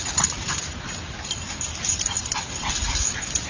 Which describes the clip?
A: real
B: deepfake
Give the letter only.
A